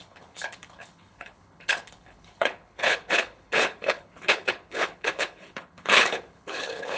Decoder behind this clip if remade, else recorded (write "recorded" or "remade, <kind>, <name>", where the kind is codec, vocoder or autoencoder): remade, codec, HILCodec